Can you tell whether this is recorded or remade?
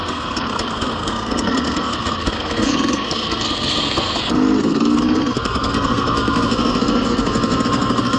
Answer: remade